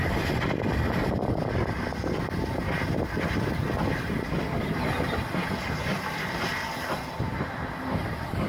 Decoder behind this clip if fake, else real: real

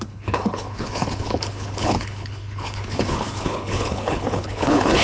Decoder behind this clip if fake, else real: fake, codec, HILCodec